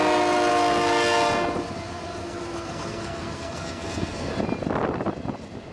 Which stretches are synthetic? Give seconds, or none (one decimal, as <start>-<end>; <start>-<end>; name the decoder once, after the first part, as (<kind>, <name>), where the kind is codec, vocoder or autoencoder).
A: 2.2-4.3 (codec, SNAC)